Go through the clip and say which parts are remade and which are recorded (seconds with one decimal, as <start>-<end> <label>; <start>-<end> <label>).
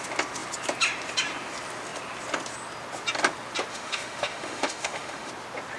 0.0-3.7 recorded; 3.7-5.3 remade; 5.3-5.8 recorded